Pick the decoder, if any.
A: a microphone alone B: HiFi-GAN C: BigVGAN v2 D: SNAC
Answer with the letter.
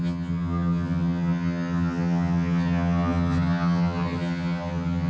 B